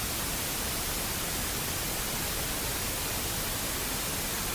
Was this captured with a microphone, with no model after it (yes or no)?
yes